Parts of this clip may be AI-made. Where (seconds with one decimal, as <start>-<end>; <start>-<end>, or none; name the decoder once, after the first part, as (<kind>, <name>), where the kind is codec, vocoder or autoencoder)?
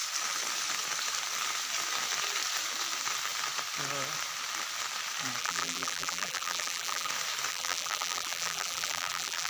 5.4-7.1 (vocoder, BigVGAN v2); 7.5-9.5